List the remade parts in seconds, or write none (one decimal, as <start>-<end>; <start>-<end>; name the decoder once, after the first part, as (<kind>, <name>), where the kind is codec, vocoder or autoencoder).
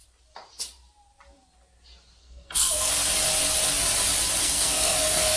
2.2-2.9 (codec, SNAC); 4.4-5.4